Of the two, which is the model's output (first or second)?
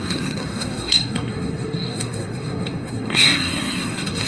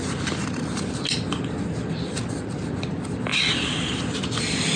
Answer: first